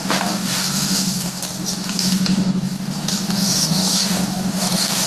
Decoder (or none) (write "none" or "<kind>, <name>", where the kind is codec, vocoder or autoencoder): codec, DAC